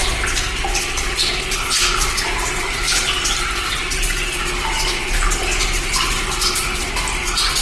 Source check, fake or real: real